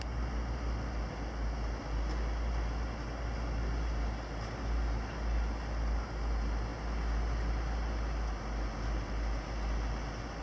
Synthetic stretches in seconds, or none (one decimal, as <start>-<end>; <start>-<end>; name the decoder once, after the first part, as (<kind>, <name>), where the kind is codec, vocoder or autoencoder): none